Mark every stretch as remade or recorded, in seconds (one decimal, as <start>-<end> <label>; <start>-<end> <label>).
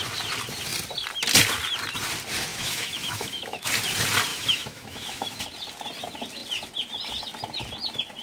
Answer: 0.0-2.5 recorded; 2.5-3.7 remade; 3.7-4.3 recorded; 4.3-5.4 remade; 5.4-8.2 recorded